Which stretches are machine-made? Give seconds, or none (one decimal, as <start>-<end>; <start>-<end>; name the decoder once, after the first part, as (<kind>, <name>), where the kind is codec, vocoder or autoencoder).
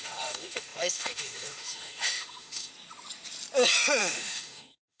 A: 0.0-2.7 (autoencoder, DAC-VAE); 4.0-5.0